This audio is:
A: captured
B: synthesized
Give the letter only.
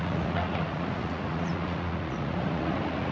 B